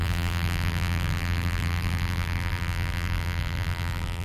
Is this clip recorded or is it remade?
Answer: remade